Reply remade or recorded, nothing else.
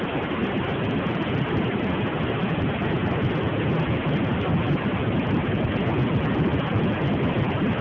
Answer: recorded